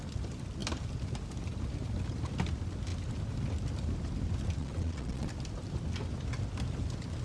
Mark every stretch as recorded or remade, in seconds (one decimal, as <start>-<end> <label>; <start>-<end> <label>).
0.0-4.6 recorded; 4.6-5.3 remade; 5.3-7.2 recorded